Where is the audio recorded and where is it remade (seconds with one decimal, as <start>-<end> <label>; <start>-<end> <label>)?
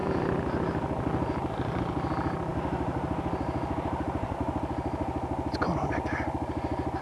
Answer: 0.0-7.0 recorded